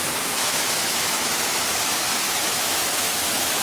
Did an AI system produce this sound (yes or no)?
yes